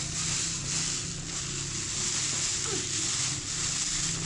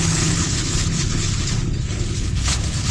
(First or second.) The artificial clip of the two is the second